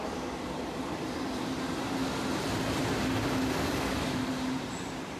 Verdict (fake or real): real